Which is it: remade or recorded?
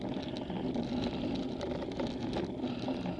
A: recorded